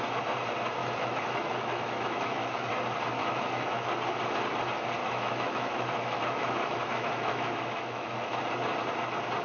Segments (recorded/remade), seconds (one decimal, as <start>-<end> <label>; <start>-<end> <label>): 0.0-0.8 recorded; 0.8-2.7 remade; 2.7-3.2 recorded; 3.2-3.9 remade; 3.9-5.0 recorded; 5.0-8.4 remade; 8.4-9.4 recorded